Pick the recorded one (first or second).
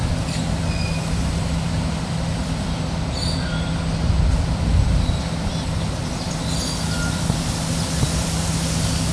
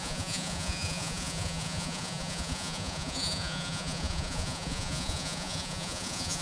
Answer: first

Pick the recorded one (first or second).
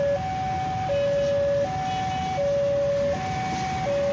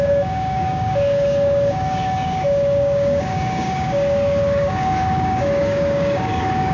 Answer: first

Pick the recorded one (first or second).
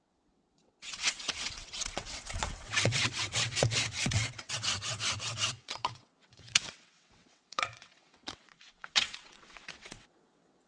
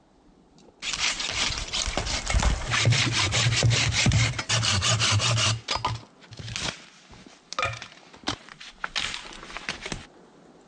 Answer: second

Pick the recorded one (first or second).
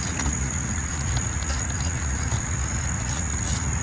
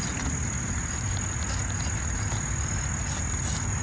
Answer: second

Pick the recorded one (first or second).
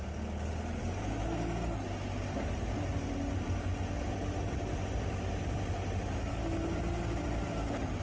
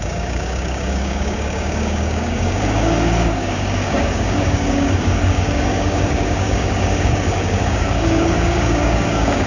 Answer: first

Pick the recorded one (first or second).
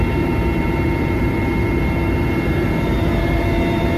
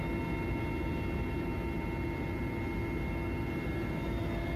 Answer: second